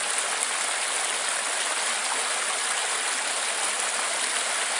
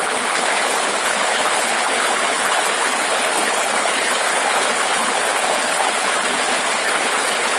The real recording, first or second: first